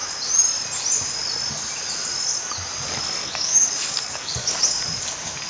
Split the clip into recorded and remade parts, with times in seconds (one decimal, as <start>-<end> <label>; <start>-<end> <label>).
0.0-3.2 recorded; 3.2-4.5 remade; 4.5-5.5 recorded